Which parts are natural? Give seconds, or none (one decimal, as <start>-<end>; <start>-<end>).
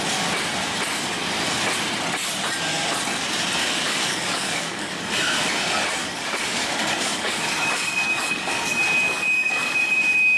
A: 0.0-3.6; 5.0-6.0